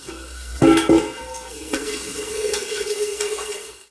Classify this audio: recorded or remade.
remade